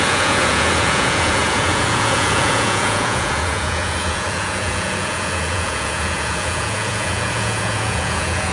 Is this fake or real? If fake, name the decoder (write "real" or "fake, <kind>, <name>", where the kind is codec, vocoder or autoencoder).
fake, vocoder, Vocos